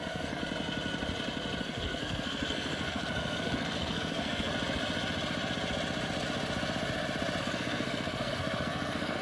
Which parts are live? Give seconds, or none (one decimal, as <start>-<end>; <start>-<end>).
0.4-1.6; 4.5-7.4